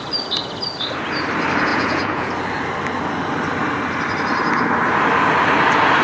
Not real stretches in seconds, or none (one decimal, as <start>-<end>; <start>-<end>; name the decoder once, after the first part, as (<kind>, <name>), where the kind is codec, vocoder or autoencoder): 1.7-2.3 (vocoder, Vocos)